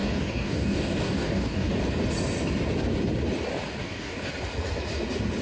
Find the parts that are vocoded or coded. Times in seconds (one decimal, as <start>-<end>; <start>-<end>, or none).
0.0-1.7; 3.8-4.3